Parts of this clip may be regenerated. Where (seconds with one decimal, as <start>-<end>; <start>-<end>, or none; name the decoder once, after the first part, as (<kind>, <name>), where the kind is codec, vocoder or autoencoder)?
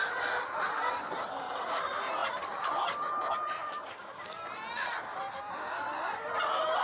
none